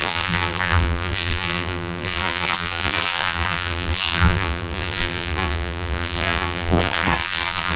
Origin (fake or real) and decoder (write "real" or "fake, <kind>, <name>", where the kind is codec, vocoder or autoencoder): fake, vocoder, BigVGAN v2